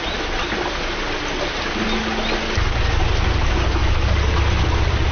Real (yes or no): yes